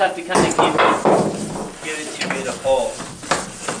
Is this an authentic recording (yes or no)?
yes